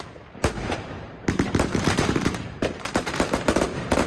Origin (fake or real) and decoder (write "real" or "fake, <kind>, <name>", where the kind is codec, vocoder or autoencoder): fake, vocoder, BigVGAN v2